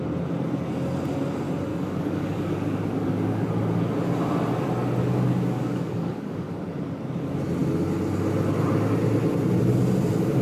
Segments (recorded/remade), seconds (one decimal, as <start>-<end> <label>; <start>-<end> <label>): 0.0-1.7 recorded; 1.7-3.5 remade; 3.5-5.0 recorded; 5.0-6.5 remade; 6.5-10.4 recorded